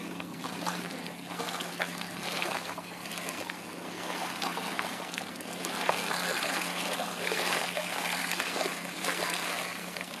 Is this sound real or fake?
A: fake